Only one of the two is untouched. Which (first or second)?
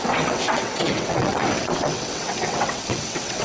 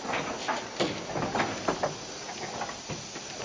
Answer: second